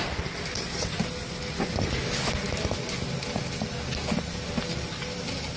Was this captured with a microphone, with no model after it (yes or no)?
yes